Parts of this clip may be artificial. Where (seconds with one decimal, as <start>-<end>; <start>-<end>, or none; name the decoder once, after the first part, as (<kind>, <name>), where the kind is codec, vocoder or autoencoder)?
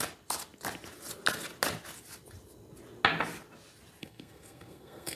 4.0-5.2 (codec, SNAC)